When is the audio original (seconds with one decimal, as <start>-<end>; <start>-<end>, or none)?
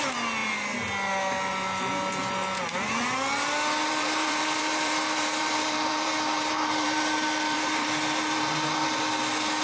0.0-3.8; 9.1-9.6